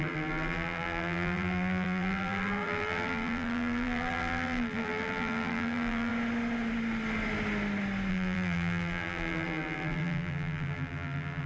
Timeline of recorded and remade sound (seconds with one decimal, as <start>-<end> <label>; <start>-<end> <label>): 0.0-6.1 remade; 6.1-8.1 recorded; 8.1-11.5 remade